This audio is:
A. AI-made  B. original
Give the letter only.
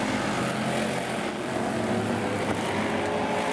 B